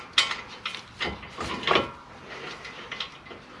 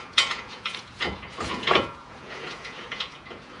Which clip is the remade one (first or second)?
second